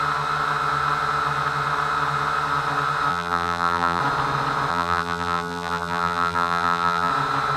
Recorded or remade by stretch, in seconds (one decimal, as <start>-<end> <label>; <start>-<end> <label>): 0.0-3.1 recorded; 3.1-4.0 remade; 4.0-4.7 recorded; 4.7-7.1 remade; 7.1-7.6 recorded